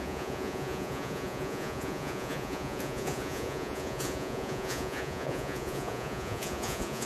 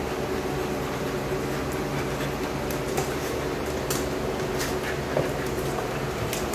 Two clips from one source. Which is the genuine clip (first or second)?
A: second